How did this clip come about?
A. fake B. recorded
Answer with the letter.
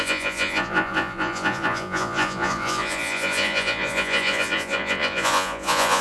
A